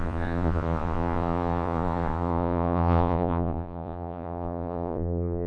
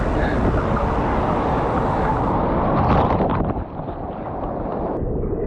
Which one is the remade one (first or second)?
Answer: first